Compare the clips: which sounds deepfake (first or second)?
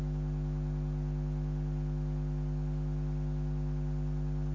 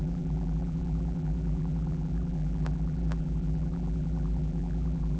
second